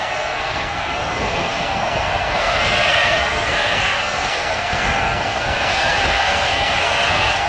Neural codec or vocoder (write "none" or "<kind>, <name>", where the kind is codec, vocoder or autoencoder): codec, SNAC